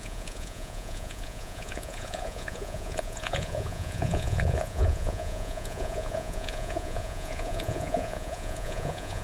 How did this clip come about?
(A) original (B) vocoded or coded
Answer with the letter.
B